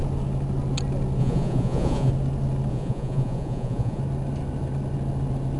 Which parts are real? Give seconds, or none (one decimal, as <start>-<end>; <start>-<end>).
0.0-1.2; 2.1-2.7; 4.0-5.6